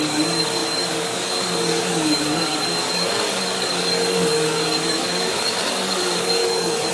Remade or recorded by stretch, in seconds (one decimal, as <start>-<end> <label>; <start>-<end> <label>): 0.0-6.9 remade